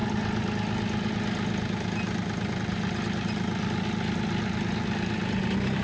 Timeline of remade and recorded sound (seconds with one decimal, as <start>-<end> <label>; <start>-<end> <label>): 0.0-5.8 recorded